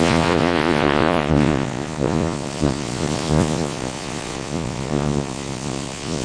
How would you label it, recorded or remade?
remade